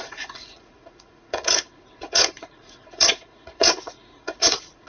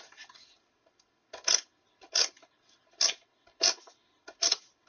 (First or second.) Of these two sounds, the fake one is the first